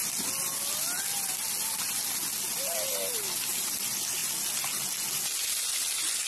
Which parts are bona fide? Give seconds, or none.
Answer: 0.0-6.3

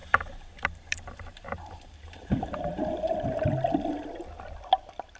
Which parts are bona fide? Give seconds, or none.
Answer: 3.1-5.2

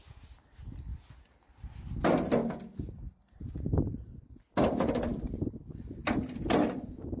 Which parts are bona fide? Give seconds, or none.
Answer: 0.0-0.9; 1.8-2.7; 4.0-7.2

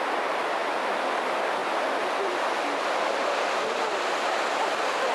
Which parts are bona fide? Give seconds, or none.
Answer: 0.0-5.1

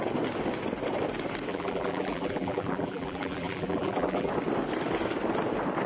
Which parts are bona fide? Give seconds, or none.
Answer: 0.0-1.5; 4.3-5.9

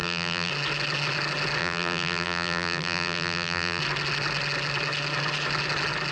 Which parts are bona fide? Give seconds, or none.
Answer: 0.5-1.6; 3.8-6.1

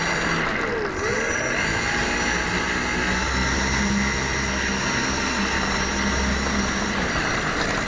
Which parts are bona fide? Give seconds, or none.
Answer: 0.0-6.3; 7.1-7.9